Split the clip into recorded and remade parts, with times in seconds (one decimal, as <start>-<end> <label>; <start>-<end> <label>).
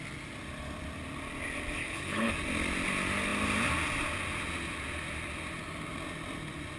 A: 0.0-1.8 recorded; 1.8-2.3 remade; 2.3-6.8 recorded